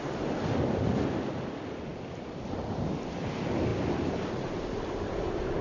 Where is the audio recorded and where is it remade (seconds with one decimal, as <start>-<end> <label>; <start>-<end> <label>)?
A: 0.0-5.6 recorded

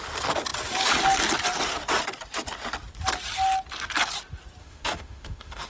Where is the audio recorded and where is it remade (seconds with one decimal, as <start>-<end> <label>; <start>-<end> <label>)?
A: 0.0-4.6 recorded; 4.6-5.7 remade

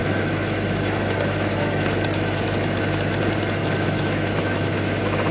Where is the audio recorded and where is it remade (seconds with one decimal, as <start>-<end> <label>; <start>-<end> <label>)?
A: 0.0-3.2 remade; 3.2-3.6 recorded; 3.6-5.3 remade

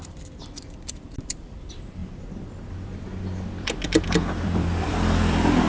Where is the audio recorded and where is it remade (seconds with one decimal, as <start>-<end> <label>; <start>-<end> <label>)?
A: 0.0-5.7 remade

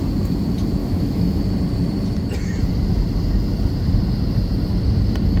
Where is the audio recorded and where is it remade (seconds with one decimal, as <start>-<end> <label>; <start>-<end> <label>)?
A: 0.0-0.8 recorded; 0.8-1.4 remade; 1.4-5.4 recorded

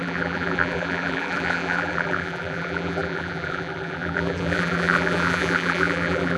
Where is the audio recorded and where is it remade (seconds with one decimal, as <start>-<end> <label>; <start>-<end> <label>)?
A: 0.0-6.4 remade

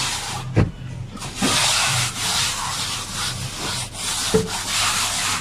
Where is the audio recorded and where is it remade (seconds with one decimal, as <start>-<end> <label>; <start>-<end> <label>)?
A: 0.0-1.6 recorded; 1.6-2.7 remade; 2.7-5.4 recorded

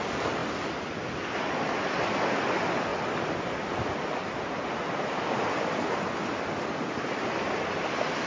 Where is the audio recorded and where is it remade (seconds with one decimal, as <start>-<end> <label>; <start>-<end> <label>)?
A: 0.0-8.3 recorded